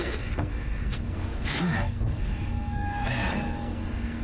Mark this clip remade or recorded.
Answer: remade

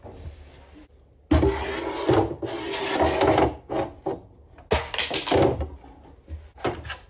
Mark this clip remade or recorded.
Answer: recorded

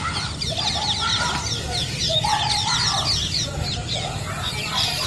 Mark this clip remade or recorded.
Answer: recorded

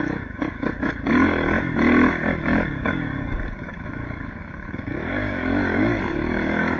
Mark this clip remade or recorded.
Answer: remade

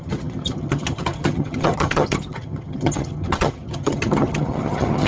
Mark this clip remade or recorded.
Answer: remade